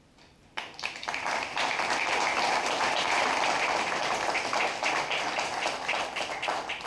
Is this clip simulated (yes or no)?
no